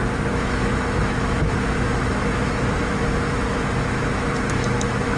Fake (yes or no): yes